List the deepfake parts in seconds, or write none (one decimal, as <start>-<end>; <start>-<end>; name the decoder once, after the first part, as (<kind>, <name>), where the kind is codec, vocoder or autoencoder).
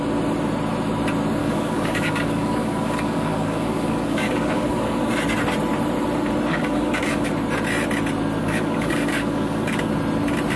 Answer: 1.4-5.1 (codec, DAC); 6.5-7.3; 8.4-9.9